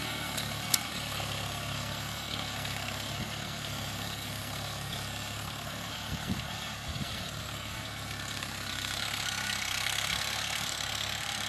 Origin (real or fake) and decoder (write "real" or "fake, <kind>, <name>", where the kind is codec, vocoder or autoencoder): fake, codec, SNAC